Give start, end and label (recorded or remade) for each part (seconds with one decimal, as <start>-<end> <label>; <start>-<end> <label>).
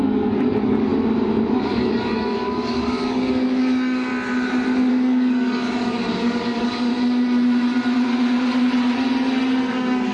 0.0-0.9 remade; 0.9-1.5 recorded; 1.5-4.1 remade; 4.1-4.9 recorded; 4.9-6.9 remade; 6.9-9.7 recorded; 9.7-10.1 remade